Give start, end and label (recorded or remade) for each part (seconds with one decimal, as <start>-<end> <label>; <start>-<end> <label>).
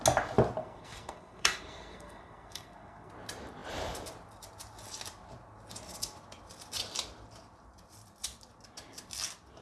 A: 0.0-0.6 recorded; 0.6-3.1 remade; 3.1-9.6 recorded